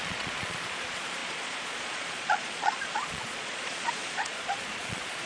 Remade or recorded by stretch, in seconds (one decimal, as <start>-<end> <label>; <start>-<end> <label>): 0.0-5.3 remade